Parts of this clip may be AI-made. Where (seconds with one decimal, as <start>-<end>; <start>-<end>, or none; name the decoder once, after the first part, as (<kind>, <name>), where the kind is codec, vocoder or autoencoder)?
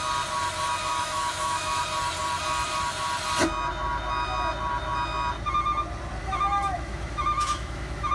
0.9-1.8 (autoencoder, DAC-VAE); 6.2-8.1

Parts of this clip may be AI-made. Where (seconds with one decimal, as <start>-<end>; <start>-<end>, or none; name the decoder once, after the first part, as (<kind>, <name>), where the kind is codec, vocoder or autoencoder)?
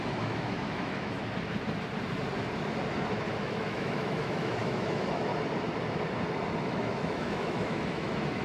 0.0-1.2 (autoencoder, DAC-VAE); 3.3-5.3; 6.6-8.4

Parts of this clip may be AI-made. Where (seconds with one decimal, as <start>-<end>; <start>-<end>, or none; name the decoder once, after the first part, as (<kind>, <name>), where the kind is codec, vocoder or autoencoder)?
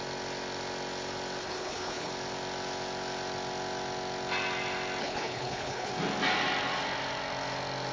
1.4-2.1 (codec, HILCodec); 5.0-5.9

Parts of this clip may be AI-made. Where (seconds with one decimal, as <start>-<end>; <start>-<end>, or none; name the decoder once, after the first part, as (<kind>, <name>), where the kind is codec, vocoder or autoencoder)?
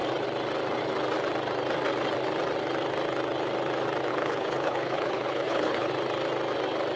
4.1-5.9 (codec, HILCodec)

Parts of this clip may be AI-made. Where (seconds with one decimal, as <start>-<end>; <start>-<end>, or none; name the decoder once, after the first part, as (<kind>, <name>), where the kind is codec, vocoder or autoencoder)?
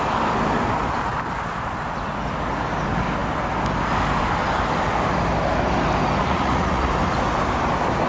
6.2-6.9 (vocoder, Vocos)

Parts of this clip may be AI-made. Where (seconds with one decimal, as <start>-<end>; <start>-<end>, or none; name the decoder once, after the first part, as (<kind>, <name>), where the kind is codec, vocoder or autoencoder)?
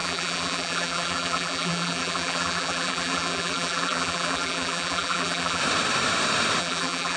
0.0-5.6 (vocoder, BigVGAN v2); 6.6-7.2